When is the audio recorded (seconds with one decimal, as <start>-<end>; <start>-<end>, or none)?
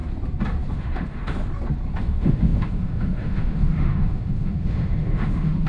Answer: 0.0-0.7; 1.4-2.0